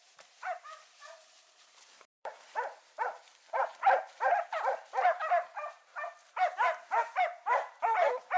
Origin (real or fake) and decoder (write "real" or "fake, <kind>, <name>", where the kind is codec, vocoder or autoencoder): fake, vocoder, BigVGAN v2